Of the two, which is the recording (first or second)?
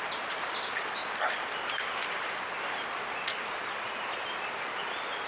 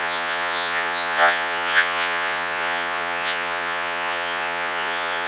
first